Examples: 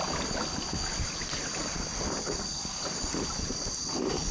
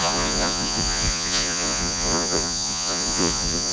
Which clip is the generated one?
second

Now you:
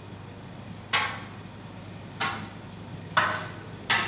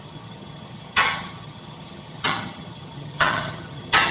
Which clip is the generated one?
second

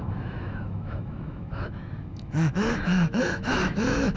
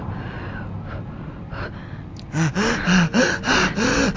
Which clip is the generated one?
first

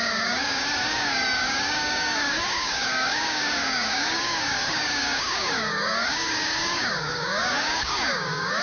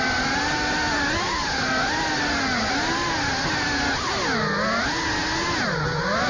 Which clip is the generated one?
first